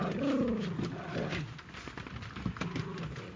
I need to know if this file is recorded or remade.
recorded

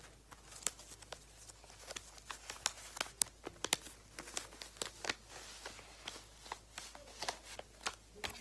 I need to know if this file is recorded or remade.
recorded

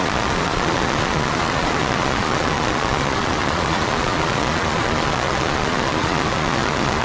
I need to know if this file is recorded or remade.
remade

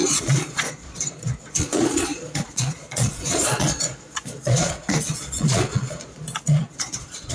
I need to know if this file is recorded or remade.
remade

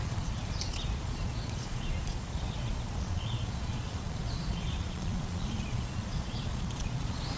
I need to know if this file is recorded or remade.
remade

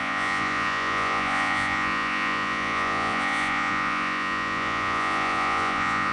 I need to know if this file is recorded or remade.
remade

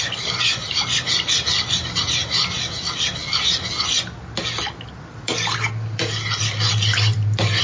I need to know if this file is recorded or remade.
recorded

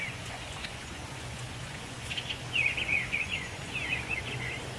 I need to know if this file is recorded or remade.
remade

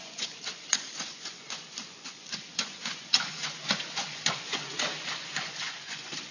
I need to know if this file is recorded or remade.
remade